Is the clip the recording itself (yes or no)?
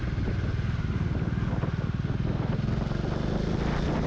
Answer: yes